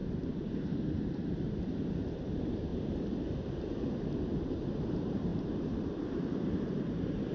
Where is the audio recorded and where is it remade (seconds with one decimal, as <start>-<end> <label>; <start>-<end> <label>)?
0.0-0.5 recorded; 0.5-2.7 remade; 2.7-4.3 recorded; 4.3-7.3 remade

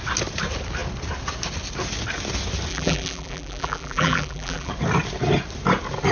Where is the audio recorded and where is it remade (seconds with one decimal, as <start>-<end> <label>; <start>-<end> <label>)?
0.0-2.7 recorded; 2.7-4.7 remade; 4.7-6.1 recorded